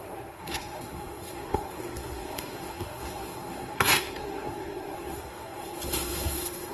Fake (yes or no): yes